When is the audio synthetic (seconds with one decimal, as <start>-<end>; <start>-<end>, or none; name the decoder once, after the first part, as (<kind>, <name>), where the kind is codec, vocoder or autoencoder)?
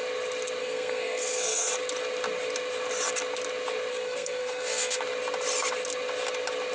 0.6-1.7 (codec, SNAC); 3.9-5.0